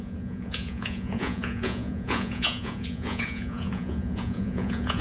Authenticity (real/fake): fake